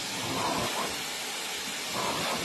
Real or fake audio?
real